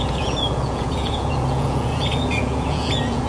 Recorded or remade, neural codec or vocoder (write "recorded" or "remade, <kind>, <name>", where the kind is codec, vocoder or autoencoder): remade, vocoder, Vocos